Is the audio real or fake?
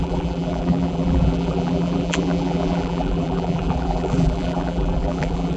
fake